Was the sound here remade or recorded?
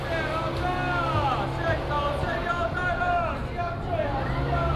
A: recorded